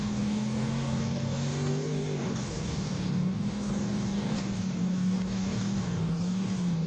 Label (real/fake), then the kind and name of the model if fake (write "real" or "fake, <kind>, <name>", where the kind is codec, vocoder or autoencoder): fake, codec, DAC